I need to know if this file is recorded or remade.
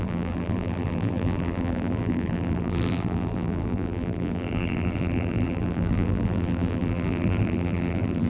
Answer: remade